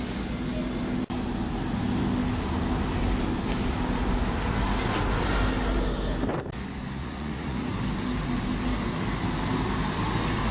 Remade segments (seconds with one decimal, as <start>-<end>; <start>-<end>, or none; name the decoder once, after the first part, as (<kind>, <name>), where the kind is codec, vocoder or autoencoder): 7.0-7.7 (vocoder, Vocos)

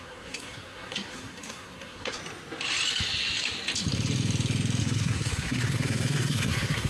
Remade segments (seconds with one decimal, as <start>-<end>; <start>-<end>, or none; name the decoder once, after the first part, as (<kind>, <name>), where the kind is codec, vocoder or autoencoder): 0.0-2.2 (codec, SNAC); 4.8-6.9

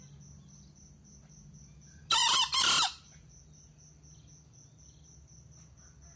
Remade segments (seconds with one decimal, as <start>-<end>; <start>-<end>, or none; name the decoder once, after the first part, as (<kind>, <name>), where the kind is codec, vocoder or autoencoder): none

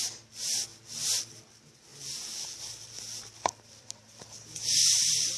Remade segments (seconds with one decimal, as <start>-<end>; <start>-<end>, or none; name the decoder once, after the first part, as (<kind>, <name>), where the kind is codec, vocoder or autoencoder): none

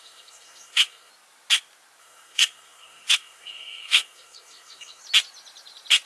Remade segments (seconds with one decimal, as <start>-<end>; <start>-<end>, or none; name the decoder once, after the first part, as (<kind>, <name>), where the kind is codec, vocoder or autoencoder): 0.0-1.1 (codec, SNAC); 2.0-5.0

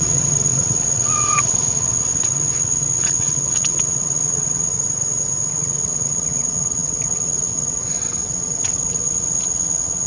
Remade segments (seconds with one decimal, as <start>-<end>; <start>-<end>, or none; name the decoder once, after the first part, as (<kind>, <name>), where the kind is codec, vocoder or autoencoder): 0.0-4.7 (vocoder, WaveNeXt); 5.5-10.1

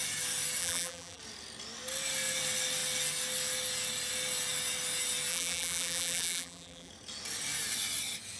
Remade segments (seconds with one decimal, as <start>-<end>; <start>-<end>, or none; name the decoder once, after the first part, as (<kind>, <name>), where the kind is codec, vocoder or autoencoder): 0.6-1.2 (vocoder, BigVGAN v2); 5.3-6.9

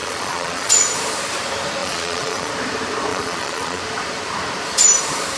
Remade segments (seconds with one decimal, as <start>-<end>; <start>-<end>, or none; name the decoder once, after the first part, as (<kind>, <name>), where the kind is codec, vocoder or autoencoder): 0.0-0.7 (vocoder, Vocos); 1.8-2.5; 3.1-3.8